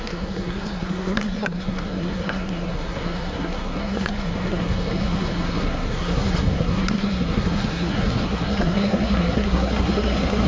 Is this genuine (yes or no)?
no